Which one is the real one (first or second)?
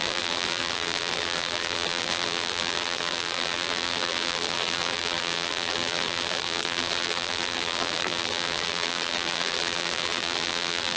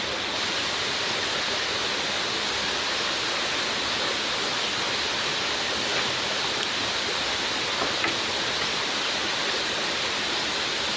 second